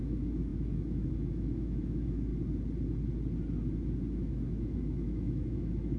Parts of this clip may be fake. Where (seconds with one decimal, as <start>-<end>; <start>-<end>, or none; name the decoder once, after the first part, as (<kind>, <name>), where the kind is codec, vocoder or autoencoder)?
0.0-2.3 (autoencoder, DAC-VAE); 4.1-6.0